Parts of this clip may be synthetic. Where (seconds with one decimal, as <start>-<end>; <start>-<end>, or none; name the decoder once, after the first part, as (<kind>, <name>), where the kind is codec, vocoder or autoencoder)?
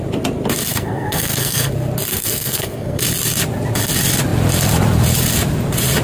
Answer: 0.7-1.7 (codec, SNAC); 2.1-3.0